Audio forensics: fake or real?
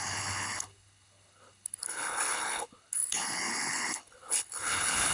fake